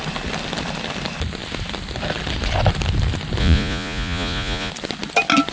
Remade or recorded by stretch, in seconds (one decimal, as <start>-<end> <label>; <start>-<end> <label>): 0.0-3.4 recorded; 3.4-4.7 remade; 4.7-5.5 recorded